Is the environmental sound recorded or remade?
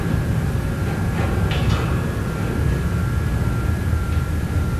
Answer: recorded